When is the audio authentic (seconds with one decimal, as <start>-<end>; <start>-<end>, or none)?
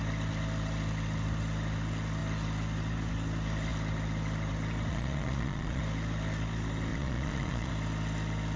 0.0-4.9; 5.8-6.9; 7.7-8.6